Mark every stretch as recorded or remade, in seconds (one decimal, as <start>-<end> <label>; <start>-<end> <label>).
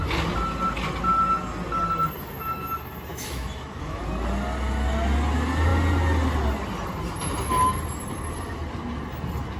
0.0-3.1 recorded; 3.1-4.0 remade; 4.0-9.6 recorded